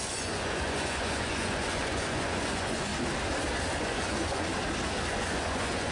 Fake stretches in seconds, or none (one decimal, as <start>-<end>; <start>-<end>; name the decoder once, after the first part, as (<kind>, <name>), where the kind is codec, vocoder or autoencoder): 0.0-2.9 (vocoder, Vocos); 3.8-4.5; 5.1-5.9